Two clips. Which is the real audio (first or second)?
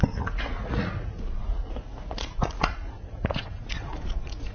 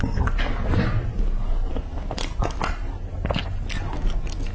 second